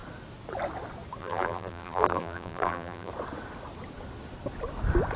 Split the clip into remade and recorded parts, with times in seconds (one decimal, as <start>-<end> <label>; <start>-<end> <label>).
0.0-1.2 recorded; 1.2-3.1 remade; 3.1-5.2 recorded